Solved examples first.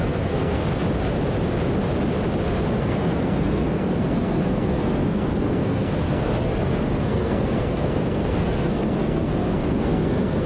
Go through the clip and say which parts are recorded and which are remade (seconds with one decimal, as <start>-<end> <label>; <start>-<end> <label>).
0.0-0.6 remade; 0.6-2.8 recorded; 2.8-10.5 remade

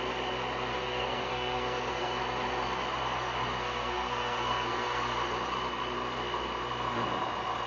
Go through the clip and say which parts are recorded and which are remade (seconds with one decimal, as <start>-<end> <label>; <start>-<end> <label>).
0.0-0.7 recorded; 0.7-2.2 remade; 2.2-3.6 recorded; 3.6-5.0 remade; 5.0-7.7 recorded

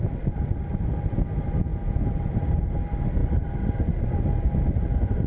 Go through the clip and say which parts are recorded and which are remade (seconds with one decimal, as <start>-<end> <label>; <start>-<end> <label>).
0.0-5.3 recorded

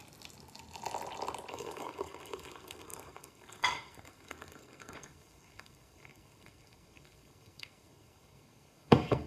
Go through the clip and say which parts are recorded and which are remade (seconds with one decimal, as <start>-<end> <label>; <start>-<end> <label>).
0.0-1.5 recorded; 1.5-9.3 remade